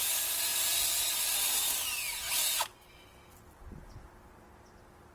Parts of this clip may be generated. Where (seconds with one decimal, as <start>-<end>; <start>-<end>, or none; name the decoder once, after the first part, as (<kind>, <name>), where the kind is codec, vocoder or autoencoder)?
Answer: none